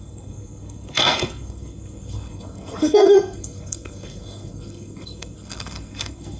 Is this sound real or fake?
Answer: fake